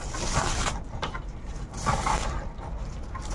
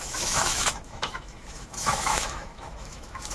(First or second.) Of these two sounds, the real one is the first